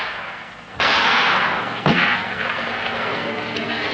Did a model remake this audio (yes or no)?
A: yes